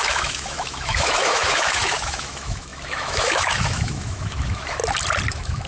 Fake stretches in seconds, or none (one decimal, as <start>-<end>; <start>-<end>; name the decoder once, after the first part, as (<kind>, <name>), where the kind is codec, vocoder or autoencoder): 0.0-4.8 (autoencoder, DAC-VAE); 5.3-5.7